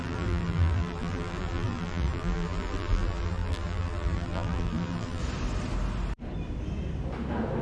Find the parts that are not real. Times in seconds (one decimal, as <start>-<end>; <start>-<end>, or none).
0.0-5.2